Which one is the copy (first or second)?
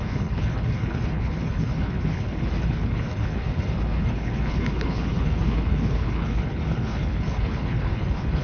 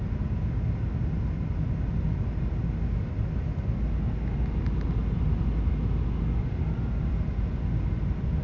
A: first